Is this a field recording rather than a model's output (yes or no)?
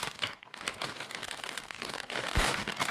no